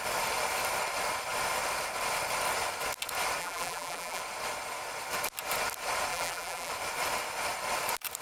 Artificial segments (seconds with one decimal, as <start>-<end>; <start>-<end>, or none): 3.4-4.2; 6.1-6.7